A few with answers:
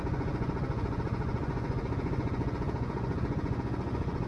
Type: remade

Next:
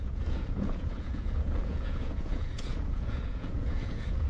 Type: remade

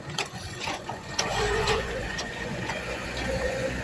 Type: remade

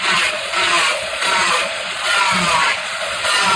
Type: remade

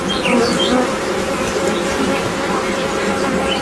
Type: recorded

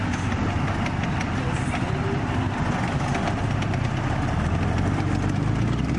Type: recorded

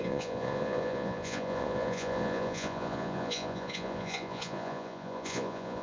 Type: remade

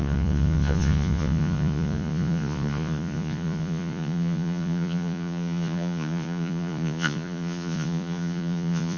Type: remade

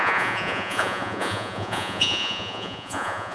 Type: remade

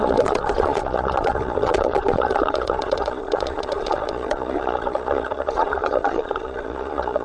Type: remade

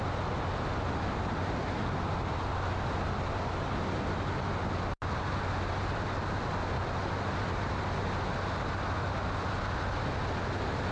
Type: recorded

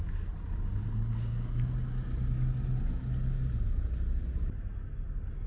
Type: recorded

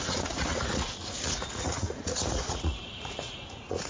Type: remade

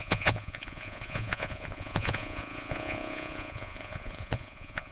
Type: remade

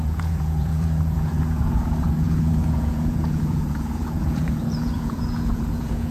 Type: remade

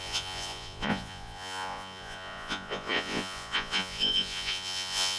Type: remade